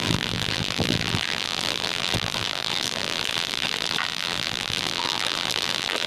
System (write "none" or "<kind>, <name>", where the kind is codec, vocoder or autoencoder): vocoder, BigVGAN v2